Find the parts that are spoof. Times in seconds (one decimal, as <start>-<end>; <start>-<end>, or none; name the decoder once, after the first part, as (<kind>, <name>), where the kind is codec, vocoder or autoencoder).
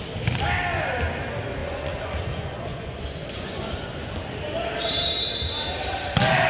1.6-4.2 (vocoder, Vocos)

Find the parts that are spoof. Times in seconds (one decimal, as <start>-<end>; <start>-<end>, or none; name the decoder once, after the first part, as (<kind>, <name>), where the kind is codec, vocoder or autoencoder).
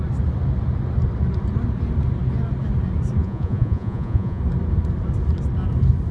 3.2-4.4 (vocoder, Vocos)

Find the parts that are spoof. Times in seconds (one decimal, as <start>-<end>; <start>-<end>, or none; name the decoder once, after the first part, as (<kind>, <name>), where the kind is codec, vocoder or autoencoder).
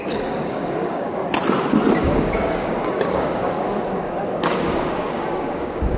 0.0-1.2 (codec, DAC); 2.0-6.0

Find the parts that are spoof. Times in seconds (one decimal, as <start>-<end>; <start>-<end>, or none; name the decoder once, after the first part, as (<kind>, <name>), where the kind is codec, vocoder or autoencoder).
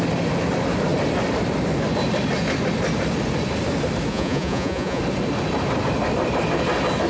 4.1-5.0 (vocoder, Vocos)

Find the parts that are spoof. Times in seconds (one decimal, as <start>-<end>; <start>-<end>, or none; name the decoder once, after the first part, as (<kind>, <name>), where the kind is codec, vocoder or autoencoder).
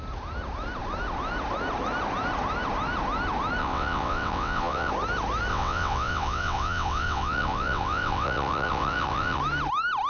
3.6-4.9 (vocoder, WaveNeXt); 5.5-9.4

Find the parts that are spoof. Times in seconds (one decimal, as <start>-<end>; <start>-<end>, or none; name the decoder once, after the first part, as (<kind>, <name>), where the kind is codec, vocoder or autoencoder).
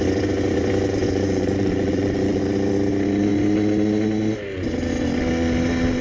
1.0-2.4 (vocoder, Vocos)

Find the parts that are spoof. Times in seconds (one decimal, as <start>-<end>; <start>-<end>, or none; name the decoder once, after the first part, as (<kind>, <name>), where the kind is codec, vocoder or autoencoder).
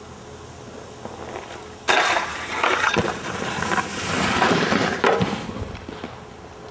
2.3-5.5 (vocoder, BigVGAN v2)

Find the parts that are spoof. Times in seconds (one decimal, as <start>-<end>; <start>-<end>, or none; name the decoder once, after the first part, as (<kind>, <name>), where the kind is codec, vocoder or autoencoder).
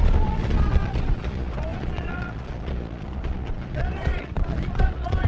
0.0-5.3 (vocoder, Vocos)